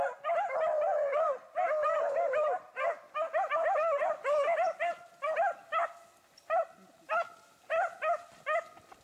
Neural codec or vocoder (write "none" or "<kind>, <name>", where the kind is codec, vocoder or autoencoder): none